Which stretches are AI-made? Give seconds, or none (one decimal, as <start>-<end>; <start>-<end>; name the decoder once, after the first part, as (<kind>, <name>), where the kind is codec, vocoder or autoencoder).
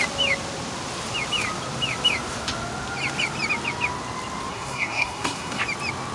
4.5-5.6 (codec, SNAC)